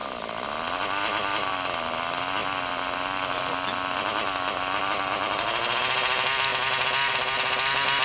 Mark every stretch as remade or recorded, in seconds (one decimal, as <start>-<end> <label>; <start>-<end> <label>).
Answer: 0.0-8.0 recorded

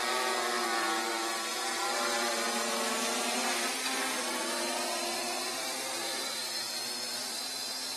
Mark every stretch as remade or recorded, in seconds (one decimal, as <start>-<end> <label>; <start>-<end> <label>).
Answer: 0.0-5.2 recorded; 5.2-6.0 remade; 6.0-8.0 recorded